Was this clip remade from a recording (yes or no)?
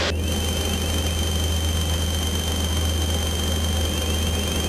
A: no